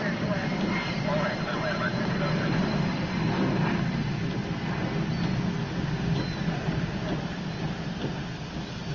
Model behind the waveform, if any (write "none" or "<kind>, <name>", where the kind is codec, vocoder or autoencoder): none